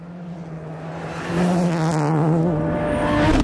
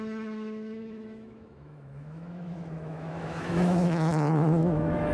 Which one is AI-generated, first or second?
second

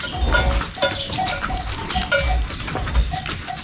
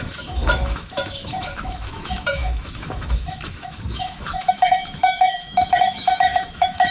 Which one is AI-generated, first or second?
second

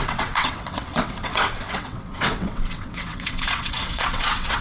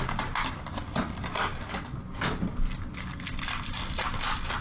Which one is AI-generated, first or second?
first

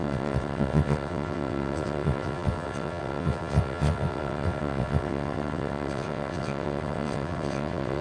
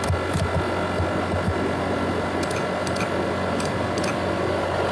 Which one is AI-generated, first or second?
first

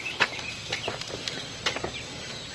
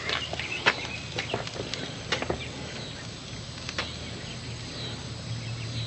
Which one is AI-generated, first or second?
first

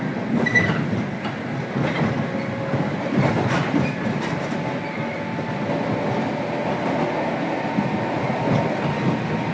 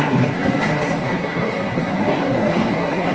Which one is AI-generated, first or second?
second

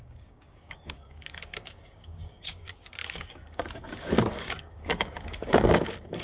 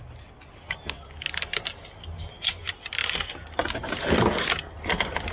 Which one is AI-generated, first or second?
first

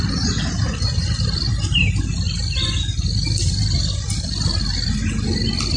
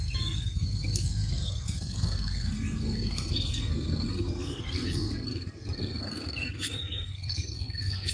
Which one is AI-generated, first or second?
second